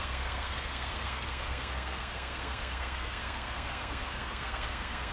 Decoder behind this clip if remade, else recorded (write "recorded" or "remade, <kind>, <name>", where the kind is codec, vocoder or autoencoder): remade, codec, SNAC